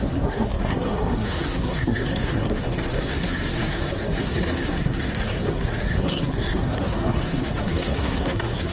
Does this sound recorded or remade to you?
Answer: remade